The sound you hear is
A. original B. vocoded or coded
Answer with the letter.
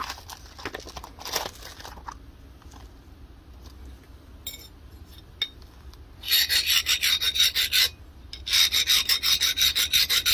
A